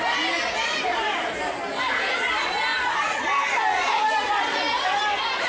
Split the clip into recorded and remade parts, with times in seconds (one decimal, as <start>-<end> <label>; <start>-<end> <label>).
0.0-2.7 recorded; 2.7-3.2 remade; 3.2-3.7 recorded; 3.7-5.0 remade; 5.0-5.5 recorded